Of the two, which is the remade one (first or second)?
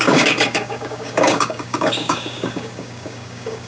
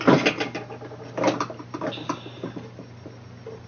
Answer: first